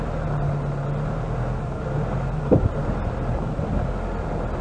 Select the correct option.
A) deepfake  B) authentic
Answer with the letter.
B